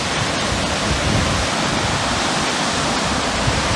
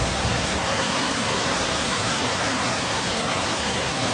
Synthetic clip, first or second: second